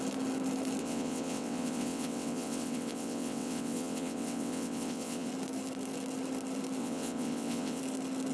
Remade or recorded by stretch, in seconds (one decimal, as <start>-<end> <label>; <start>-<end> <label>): 0.0-0.8 recorded; 0.8-5.3 remade; 5.3-6.8 recorded; 6.8-7.8 remade; 7.8-8.3 recorded